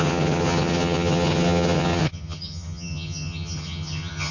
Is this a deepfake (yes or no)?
yes